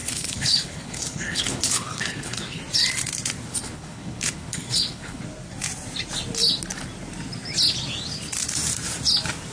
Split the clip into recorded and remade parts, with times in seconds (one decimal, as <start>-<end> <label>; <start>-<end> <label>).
0.0-2.6 remade; 2.6-3.5 recorded; 3.5-5.2 remade; 5.2-9.5 recorded